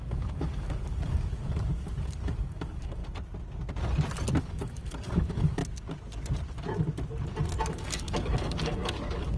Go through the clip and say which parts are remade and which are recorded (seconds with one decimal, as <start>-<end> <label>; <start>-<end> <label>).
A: 0.0-3.0 remade; 3.0-4.4 recorded; 4.4-5.6 remade; 5.6-7.7 recorded; 7.7-9.4 remade